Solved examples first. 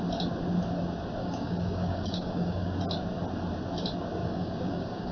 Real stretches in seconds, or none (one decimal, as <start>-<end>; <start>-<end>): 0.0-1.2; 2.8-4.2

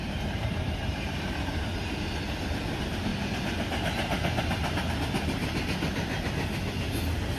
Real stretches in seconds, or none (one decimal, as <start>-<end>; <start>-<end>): 1.7-7.4

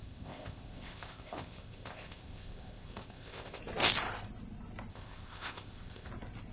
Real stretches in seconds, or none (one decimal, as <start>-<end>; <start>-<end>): 3.6-4.9; 6.1-6.5